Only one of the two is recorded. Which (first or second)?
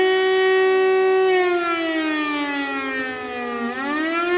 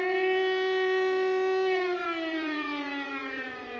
first